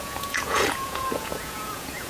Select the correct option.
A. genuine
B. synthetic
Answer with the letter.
B